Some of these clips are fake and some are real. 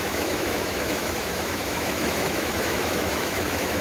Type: fake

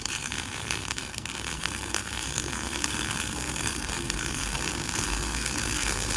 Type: fake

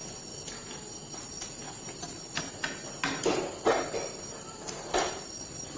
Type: real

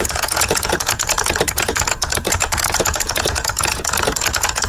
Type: fake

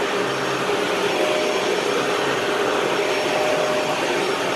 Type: real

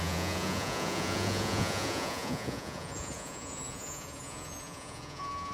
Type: fake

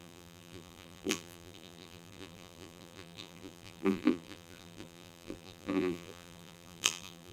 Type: fake